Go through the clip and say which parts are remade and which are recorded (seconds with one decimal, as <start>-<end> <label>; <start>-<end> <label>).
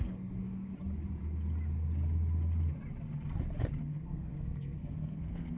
0.0-0.4 remade; 0.4-3.8 recorded; 3.8-5.6 remade